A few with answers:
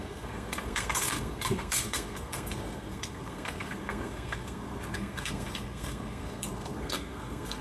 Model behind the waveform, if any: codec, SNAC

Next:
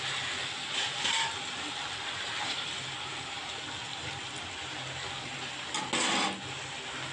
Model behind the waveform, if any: none